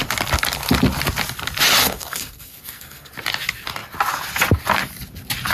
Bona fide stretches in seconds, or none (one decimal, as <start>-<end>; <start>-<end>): 0.0-1.8; 3.1-5.5